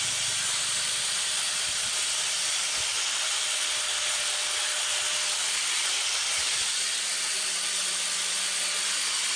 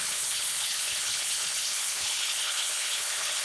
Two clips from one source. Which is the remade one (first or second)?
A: second